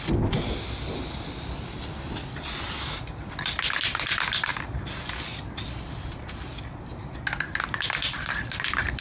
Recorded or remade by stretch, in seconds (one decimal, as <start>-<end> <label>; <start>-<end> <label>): 0.0-9.0 recorded